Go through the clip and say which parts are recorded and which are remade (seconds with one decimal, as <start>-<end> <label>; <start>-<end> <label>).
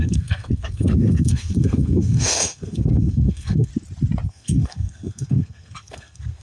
0.0-3.7 remade; 3.7-4.3 recorded; 4.3-6.4 remade